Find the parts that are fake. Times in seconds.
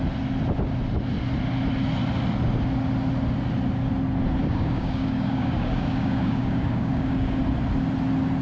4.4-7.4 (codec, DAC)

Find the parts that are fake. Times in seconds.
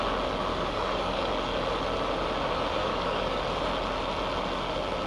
0.5-1.3 (codec, DAC); 2.8-3.4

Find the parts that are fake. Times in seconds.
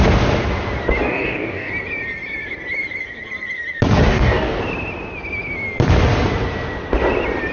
1.0-1.7 (codec, DAC); 4.1-4.6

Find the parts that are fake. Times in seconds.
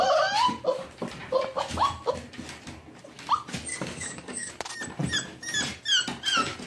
3.7-4.5 (codec, DAC)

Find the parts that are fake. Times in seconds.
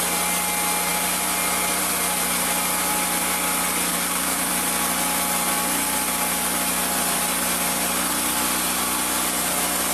3.9-4.5 (codec, DAC)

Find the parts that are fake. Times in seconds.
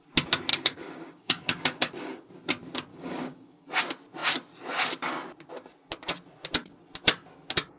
0.5-2.3 (codec, DAC); 2.9-3.8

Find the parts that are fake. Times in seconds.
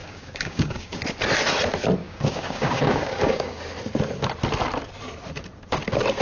0.0-1.0 (codec, DAC); 2.0-3.6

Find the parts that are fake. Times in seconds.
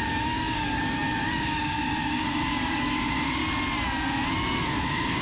0.0-3.4 (codec, DAC); 4.6-5.2